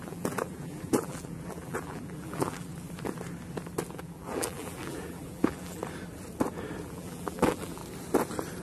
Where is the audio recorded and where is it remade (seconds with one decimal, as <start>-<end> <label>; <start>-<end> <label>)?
0.0-2.7 remade; 2.7-3.9 recorded; 3.9-5.8 remade; 5.8-6.8 recorded; 6.8-7.8 remade; 7.8-8.6 recorded